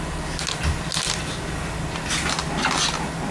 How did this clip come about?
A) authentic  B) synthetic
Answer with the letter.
A